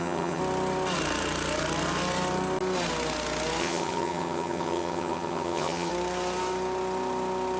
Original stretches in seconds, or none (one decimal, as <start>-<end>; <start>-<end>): 0.4-3.6; 5.9-7.6